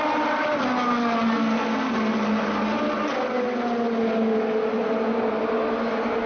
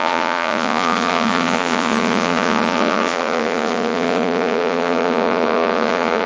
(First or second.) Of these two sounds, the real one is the first